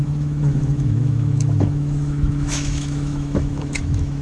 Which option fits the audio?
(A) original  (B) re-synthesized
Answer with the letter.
B